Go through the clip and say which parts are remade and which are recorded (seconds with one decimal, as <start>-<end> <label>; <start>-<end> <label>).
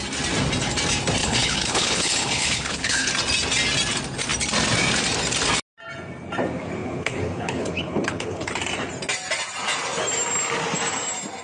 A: 0.0-1.2 recorded; 1.2-3.1 remade; 3.1-6.8 recorded; 6.8-8.5 remade; 8.5-11.4 recorded